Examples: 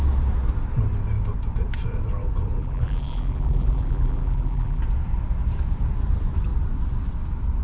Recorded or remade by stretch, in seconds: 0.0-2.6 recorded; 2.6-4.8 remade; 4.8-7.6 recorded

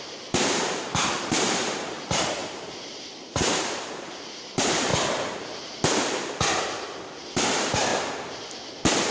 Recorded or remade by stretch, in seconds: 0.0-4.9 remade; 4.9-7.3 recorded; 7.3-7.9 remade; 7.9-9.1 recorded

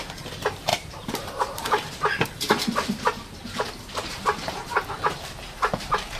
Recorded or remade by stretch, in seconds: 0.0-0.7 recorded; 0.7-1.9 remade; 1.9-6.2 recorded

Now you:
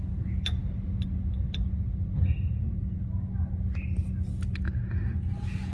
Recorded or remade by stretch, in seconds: 0.0-5.7 recorded

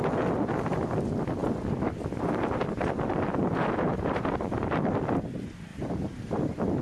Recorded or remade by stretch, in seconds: 0.0-3.9 recorded; 3.9-4.9 remade; 4.9-5.7 recorded; 5.7-6.8 remade

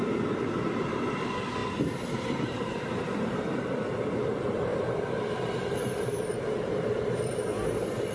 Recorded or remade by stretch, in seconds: 0.0-1.6 recorded; 1.6-3.7 remade; 3.7-4.7 recorded; 4.7-7.3 remade; 7.3-8.1 recorded